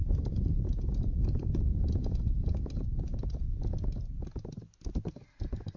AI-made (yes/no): yes